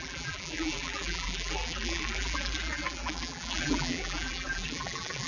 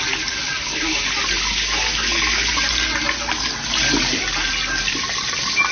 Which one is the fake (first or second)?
first